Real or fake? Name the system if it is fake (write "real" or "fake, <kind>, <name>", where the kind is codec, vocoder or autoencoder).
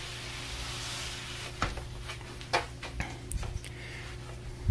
real